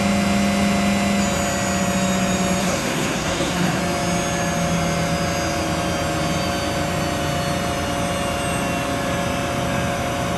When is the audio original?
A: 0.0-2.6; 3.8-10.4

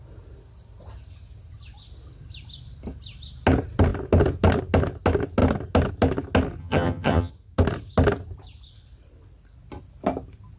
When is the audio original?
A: 0.0-6.6; 7.3-10.6

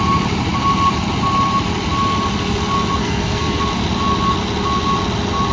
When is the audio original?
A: 0.0-3.0; 3.6-5.5